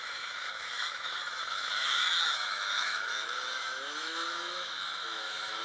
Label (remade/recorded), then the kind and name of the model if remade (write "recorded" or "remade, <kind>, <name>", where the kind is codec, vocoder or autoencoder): remade, autoencoder, DAC-VAE